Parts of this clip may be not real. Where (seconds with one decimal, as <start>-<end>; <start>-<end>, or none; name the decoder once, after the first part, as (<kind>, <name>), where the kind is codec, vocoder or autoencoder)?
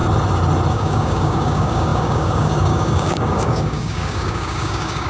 0.7-5.1 (codec, DAC)